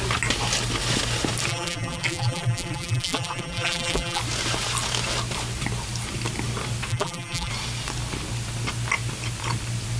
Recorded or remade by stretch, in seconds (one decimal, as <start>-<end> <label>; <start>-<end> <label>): 0.0-1.5 recorded; 1.5-4.2 remade; 4.2-6.9 recorded; 6.9-7.5 remade; 7.5-10.0 recorded